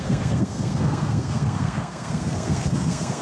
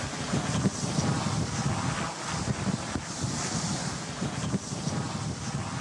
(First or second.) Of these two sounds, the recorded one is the second